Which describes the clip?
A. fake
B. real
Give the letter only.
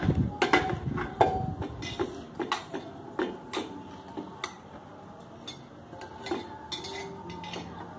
B